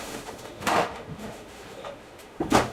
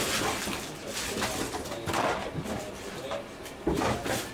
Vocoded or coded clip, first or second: first